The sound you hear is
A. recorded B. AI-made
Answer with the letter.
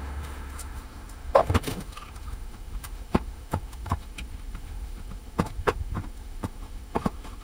B